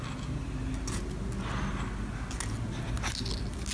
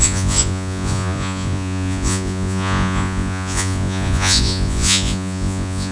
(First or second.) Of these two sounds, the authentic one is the first